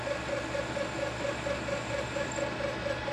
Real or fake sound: real